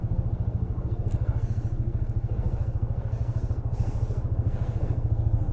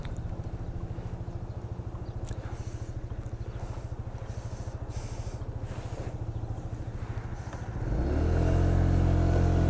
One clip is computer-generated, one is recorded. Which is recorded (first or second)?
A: second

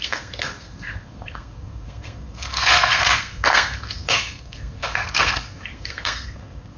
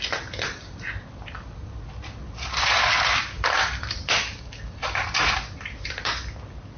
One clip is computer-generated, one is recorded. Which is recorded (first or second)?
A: second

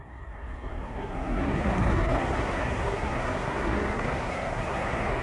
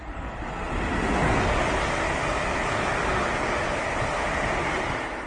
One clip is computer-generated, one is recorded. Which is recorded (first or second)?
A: second